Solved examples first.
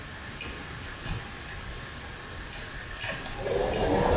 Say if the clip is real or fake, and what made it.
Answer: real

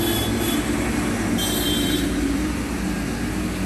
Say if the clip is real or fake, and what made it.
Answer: real